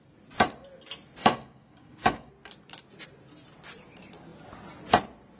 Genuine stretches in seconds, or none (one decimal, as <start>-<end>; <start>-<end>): 0.0-1.2; 2.3-5.4